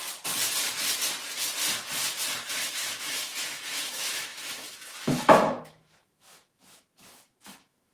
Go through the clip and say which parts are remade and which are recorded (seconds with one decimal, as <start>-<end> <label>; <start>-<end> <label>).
0.0-2.5 recorded; 2.5-7.9 remade